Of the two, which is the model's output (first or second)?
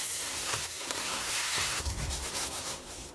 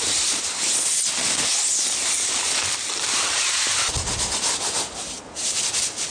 first